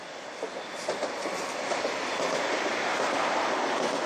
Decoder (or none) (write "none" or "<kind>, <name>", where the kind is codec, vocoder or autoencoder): none